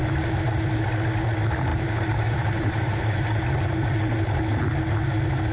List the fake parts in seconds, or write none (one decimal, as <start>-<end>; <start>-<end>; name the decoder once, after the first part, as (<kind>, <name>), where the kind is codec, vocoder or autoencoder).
1.7-3.5 (vocoder, BigVGAN v2)

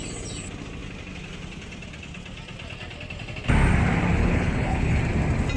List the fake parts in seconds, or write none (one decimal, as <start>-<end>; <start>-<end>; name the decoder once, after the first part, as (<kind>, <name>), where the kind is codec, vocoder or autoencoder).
4.2-5.0 (codec, HILCodec)